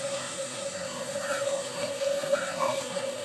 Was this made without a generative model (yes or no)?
no